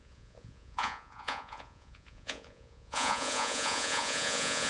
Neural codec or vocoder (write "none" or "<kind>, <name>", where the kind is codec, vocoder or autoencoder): vocoder, Vocos